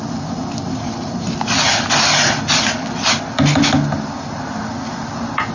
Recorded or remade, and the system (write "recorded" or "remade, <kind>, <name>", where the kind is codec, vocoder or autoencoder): recorded